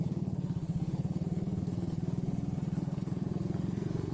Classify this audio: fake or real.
fake